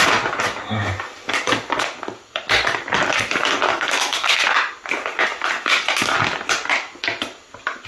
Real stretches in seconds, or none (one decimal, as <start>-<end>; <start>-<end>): 0.0-3.7; 4.3-7.9